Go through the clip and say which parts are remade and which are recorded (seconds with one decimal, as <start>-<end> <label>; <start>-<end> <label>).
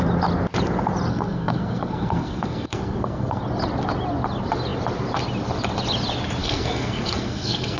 0.0-1.1 recorded; 1.1-3.4 remade; 3.4-6.4 recorded; 6.4-7.8 remade